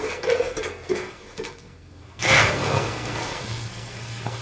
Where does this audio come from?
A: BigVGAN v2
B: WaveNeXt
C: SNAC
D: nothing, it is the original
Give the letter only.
C